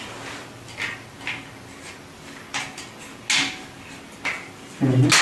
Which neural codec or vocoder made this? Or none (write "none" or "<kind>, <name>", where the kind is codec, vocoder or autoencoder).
none